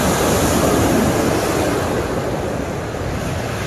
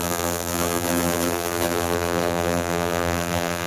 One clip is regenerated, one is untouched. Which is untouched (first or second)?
first